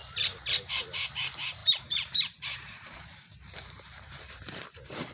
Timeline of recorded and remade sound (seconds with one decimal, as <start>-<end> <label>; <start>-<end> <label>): 0.0-0.6 recorded; 0.6-5.1 remade